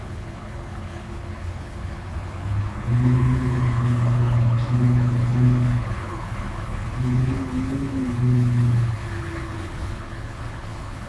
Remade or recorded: remade